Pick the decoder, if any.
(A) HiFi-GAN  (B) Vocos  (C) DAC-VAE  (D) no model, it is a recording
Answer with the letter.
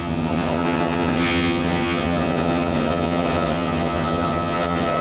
A